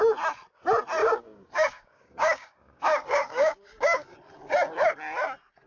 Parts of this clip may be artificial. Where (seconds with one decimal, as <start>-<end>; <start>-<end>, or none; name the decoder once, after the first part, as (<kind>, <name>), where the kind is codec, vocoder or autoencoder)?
1.0-4.2 (codec, DAC)